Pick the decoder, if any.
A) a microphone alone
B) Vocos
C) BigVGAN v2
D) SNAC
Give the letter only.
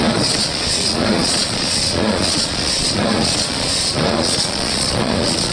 B